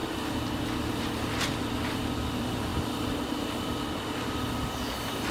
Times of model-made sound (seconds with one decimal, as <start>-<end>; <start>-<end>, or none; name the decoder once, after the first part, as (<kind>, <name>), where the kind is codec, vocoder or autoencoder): none

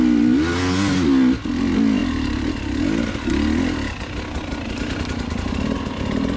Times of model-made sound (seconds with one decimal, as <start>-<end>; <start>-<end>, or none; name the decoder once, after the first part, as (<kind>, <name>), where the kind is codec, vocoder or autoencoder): none

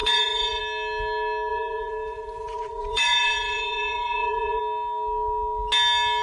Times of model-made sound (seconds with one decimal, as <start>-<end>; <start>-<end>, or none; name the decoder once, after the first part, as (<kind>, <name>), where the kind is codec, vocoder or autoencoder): 0.0-0.6 (vocoder, Vocos); 1.5-4.6